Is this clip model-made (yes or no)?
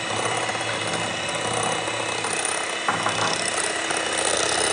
no